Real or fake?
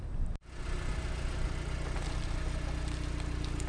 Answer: real